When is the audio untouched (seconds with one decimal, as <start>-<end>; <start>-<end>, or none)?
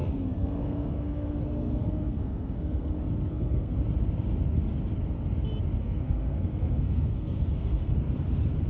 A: 2.9-3.3; 3.8-5.8; 8.0-8.7